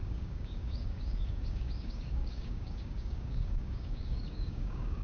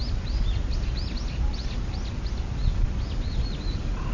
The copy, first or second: first